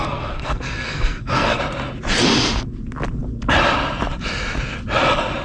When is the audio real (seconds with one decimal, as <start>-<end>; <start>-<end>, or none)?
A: 1.6-5.4